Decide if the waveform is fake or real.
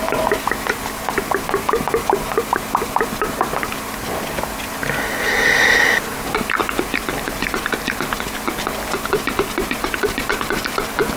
real